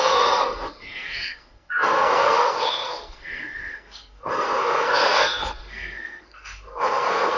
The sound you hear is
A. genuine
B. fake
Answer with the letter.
B